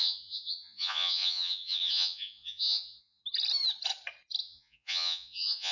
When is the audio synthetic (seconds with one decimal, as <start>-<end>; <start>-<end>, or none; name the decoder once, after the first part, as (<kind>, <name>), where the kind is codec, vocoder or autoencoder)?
0.0-3.2 (vocoder, Vocos); 4.4-5.7